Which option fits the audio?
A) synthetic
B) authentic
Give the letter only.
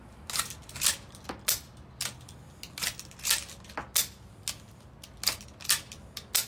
B